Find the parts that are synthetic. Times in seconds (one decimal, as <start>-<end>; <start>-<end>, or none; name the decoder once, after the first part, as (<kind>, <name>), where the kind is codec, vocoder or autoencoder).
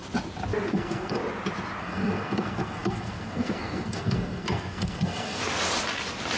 0.7-1.2 (codec, SNAC); 1.8-5.4